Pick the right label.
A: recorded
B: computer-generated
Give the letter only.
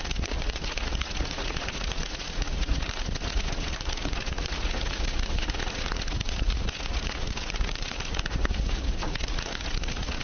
B